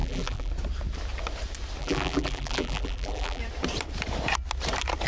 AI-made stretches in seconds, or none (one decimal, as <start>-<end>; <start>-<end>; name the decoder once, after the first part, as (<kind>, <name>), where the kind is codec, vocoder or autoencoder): 0.0-0.5 (vocoder, BigVGAN v2); 1.8-3.4